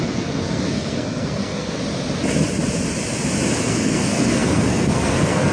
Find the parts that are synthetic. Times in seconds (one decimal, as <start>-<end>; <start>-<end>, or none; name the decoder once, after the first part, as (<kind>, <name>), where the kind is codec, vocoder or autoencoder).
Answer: 0.0-1.8 (codec, SNAC); 3.6-5.5